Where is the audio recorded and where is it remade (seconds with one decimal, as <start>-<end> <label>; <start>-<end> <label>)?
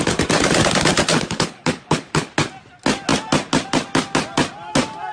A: 0.0-1.1 recorded; 1.1-2.3 remade; 2.3-5.1 recorded